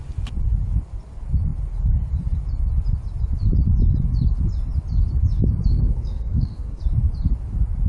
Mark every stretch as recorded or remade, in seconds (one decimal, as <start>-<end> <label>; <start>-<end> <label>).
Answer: 0.0-5.7 recorded; 5.7-6.8 remade; 6.8-7.9 recorded